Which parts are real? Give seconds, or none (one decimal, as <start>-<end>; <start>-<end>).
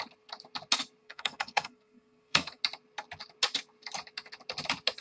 0.0-1.0; 2.6-5.0